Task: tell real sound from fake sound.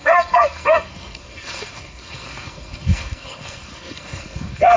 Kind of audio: fake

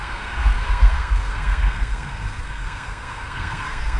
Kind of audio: fake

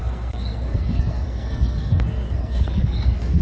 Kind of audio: fake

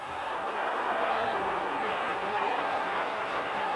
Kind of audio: fake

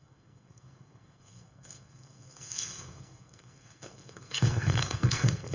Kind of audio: fake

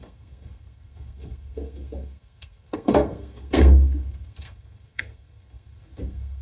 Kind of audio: fake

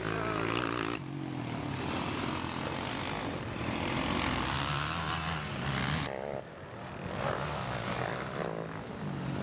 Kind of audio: real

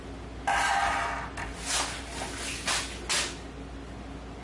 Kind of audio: real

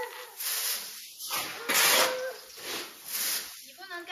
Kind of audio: real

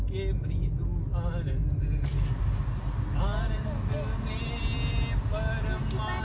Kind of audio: real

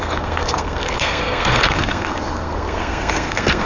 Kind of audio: fake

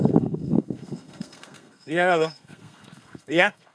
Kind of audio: fake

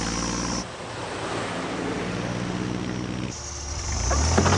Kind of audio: real